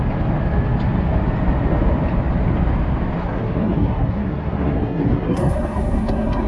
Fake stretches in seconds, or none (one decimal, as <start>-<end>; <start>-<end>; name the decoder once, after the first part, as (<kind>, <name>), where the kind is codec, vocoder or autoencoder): 3.2-6.5 (codec, SNAC)